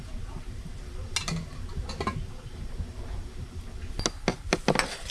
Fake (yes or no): no